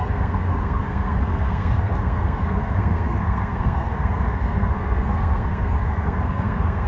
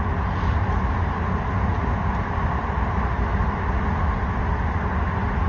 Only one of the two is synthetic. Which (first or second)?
first